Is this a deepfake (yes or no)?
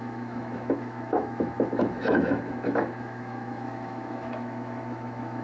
yes